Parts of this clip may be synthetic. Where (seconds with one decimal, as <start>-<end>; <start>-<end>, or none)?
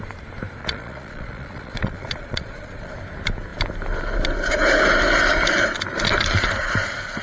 0.6-2.9